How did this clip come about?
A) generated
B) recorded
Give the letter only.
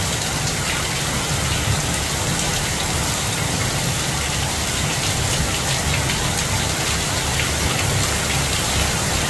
B